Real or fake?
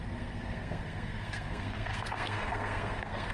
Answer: fake